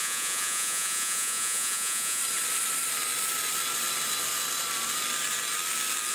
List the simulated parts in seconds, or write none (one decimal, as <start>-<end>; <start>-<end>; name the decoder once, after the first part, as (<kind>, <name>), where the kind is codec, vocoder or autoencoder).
0.0-2.2 (vocoder, Vocos)